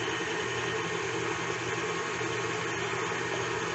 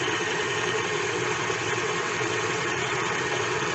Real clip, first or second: first